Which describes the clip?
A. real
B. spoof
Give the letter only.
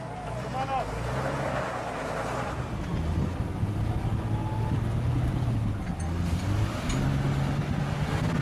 A